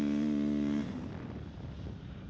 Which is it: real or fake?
real